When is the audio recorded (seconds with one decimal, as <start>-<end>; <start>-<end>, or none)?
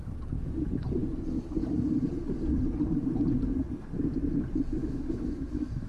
0.0-4.8